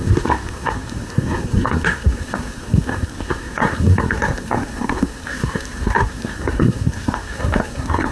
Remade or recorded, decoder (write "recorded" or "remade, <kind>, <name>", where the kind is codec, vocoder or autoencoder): remade, codec, SNAC